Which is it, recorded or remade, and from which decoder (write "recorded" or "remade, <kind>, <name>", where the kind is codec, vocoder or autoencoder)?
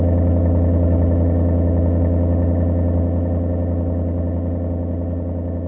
recorded